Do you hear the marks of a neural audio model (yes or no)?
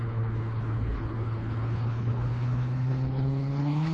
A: yes